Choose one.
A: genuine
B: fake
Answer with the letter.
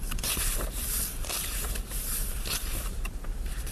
B